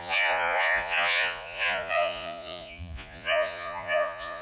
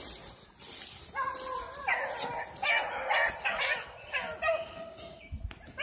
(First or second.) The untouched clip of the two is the second